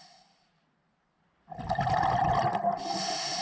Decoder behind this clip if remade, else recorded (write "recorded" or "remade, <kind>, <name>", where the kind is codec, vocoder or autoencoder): recorded